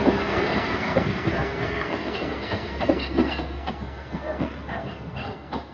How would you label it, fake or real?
fake